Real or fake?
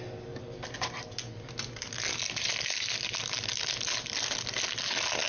real